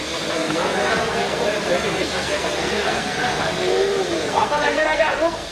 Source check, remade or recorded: remade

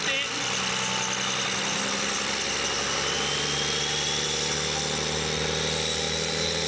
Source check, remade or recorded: recorded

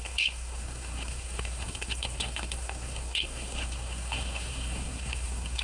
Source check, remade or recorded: remade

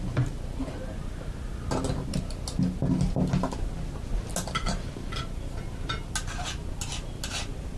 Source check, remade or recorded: recorded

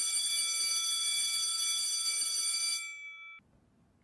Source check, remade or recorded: recorded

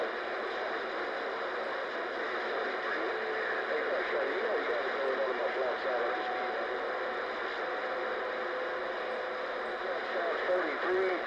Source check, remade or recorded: recorded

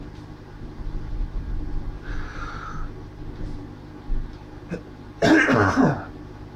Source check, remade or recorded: recorded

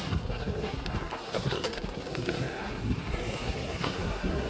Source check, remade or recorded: remade